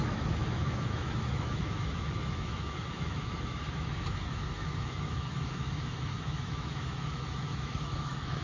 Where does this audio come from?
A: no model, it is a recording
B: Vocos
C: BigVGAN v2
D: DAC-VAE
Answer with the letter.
D